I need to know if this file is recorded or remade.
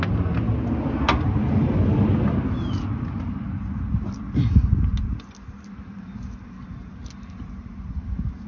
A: recorded